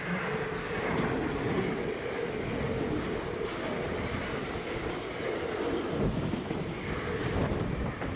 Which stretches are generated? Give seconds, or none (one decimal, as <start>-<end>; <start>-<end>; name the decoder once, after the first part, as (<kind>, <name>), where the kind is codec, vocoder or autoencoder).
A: none